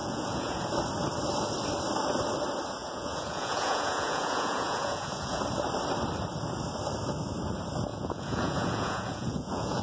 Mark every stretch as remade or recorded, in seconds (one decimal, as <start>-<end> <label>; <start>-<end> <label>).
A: 0.0-0.6 remade; 0.6-2.8 recorded; 2.8-5.4 remade; 5.4-7.9 recorded; 7.9-9.8 remade